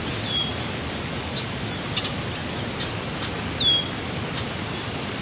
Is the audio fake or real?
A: real